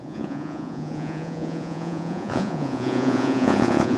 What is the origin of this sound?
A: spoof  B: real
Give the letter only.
A